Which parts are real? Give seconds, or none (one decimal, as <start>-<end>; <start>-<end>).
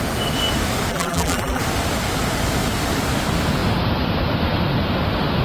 0.0-0.9; 1.6-5.4